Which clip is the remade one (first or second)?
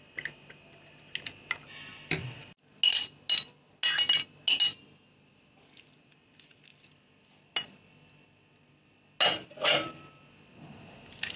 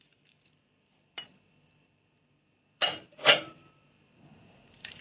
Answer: second